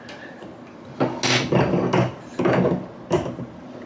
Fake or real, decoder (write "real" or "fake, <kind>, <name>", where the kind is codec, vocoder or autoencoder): real